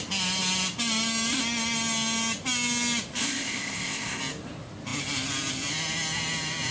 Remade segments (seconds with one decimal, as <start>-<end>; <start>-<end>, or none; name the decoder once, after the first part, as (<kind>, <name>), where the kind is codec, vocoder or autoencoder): 3.2-4.2 (codec, ZipCodec)